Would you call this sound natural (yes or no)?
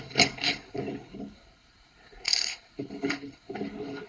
no